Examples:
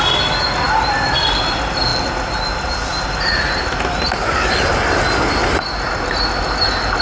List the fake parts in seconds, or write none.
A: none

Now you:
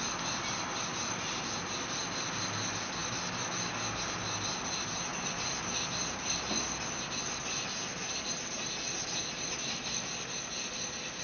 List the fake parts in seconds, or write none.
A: none

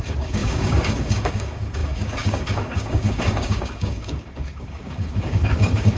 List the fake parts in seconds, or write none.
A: 0.0-6.0 (codec, DAC)

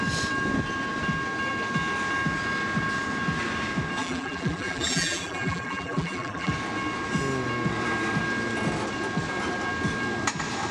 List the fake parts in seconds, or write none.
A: 4.0-6.5 (vocoder, BigVGAN v2)

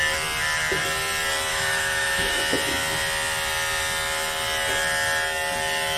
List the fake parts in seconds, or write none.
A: 1.5-2.4 (autoencoder, DAC-VAE)

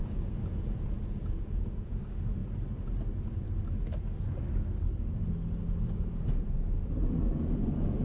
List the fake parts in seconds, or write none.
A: 0.0-2.0 (vocoder, Vocos)

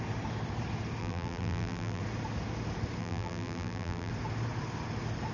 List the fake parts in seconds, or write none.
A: 1.0-2.0 (vocoder, BigVGAN v2); 3.0-4.1